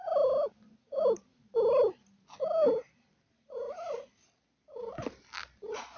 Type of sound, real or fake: real